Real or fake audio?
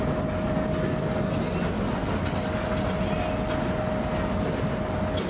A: real